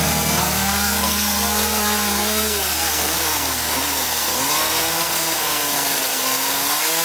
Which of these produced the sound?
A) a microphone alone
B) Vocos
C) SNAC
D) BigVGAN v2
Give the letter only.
C